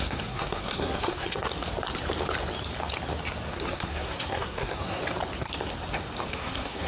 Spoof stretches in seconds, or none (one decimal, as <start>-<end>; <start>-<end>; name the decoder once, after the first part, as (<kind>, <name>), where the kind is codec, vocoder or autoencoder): 0.0-1.5 (codec, SNAC); 3.5-5.0; 6.3-6.9